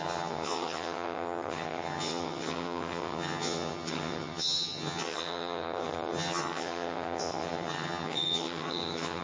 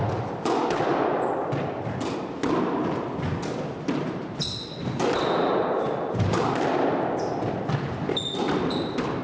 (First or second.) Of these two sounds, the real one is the second